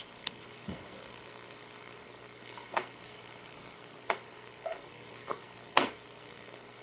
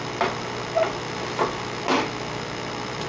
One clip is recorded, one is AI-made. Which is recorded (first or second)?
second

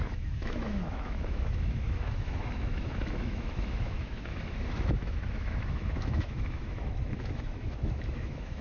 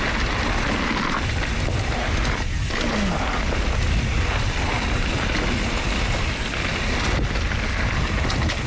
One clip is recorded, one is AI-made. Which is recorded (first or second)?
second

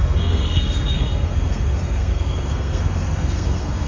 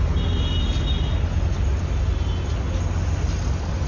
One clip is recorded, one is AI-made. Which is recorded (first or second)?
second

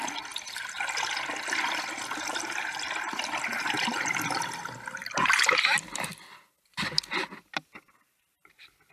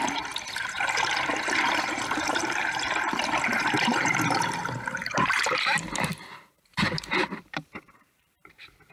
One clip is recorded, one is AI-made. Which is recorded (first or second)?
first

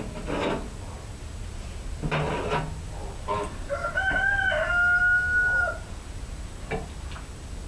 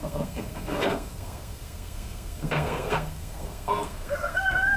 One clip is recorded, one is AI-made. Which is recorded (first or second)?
first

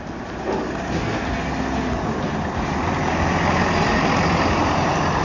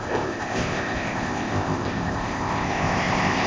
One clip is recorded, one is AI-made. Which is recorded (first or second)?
first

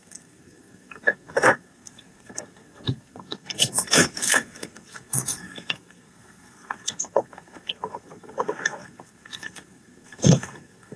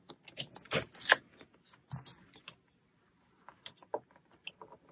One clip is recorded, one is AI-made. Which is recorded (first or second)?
second